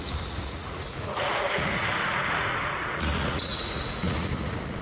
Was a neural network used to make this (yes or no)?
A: yes